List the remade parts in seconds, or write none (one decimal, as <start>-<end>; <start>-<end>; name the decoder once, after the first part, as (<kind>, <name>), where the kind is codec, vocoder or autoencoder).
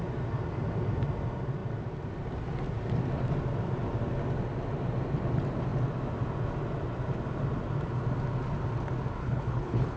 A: 9.2-10.0 (codec, HILCodec)